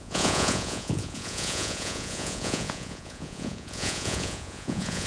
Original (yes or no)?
no